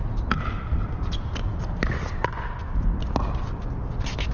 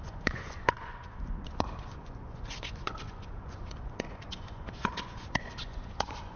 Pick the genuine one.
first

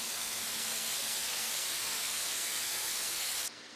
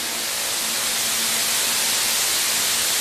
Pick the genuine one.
second